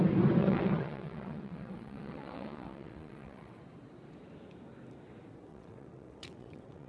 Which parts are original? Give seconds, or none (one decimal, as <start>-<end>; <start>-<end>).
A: 0.0-0.4; 3.6-5.5